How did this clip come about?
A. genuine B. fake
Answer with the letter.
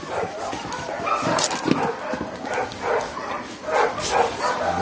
A